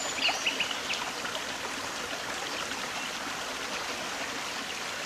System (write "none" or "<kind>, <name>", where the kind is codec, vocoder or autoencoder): none